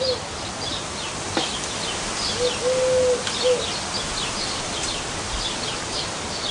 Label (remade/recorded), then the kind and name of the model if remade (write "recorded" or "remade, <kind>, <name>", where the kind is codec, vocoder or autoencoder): recorded